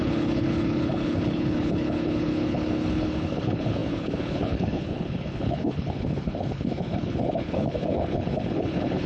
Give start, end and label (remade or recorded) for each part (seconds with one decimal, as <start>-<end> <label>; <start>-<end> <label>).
0.0-9.1 remade